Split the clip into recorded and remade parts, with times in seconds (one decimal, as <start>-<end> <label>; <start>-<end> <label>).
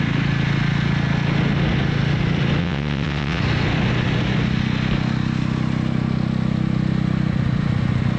0.0-2.6 recorded; 2.6-3.4 remade; 3.4-8.2 recorded